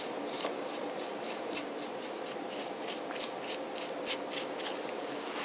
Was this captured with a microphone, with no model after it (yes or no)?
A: yes